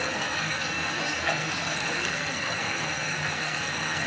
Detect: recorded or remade remade